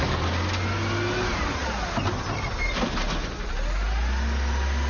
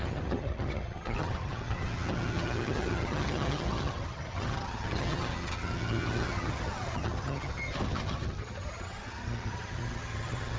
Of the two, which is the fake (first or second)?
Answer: second